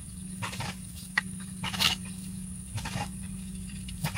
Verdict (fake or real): fake